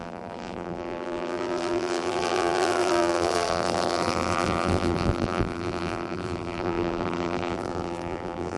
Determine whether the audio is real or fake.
fake